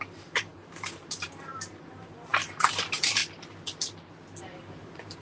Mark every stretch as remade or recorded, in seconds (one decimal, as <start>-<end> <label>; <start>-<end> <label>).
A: 0.0-3.2 remade; 3.2-4.4 recorded; 4.4-5.2 remade